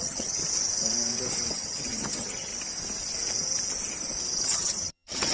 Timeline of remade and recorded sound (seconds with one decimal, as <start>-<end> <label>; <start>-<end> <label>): 0.0-0.4 remade; 0.4-1.5 recorded; 1.5-2.5 remade; 2.5-4.4 recorded; 4.4-5.3 remade